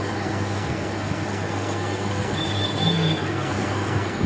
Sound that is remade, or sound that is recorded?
remade